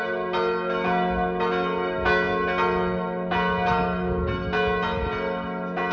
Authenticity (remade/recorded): recorded